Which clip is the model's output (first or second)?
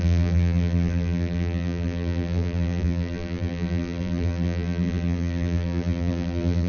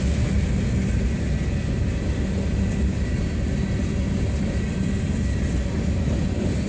first